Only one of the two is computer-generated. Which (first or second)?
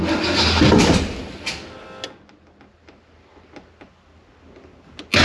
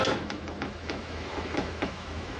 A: second